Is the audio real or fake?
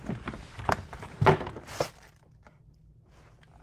real